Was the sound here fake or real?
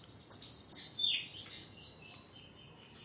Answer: real